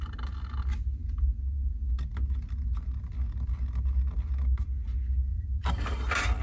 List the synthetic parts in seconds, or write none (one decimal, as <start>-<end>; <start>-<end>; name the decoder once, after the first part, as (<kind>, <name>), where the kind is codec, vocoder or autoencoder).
none